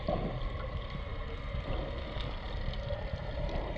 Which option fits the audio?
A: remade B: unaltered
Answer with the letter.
B